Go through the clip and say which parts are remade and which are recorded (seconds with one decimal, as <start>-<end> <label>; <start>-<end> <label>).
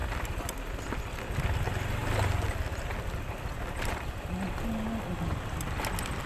0.0-6.3 recorded